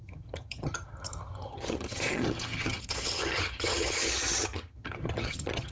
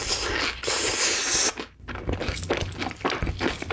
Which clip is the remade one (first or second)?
first